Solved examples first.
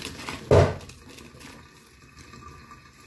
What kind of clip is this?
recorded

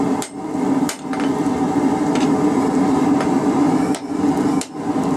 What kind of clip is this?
remade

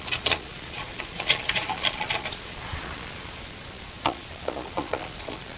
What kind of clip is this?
remade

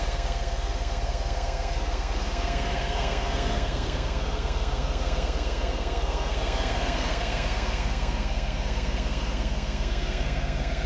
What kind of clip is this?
remade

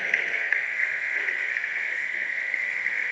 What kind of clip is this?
remade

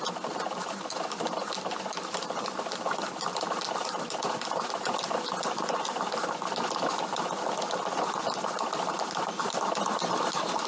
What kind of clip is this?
recorded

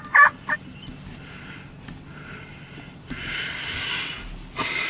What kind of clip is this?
recorded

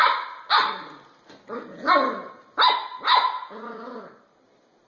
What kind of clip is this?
recorded